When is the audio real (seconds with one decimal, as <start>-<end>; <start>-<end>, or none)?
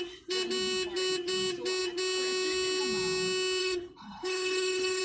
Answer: 0.0-3.6